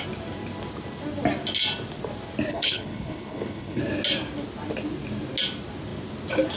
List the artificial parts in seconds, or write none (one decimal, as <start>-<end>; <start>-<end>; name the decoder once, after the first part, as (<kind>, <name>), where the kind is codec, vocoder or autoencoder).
2.5-3.8 (codec, HILCodec)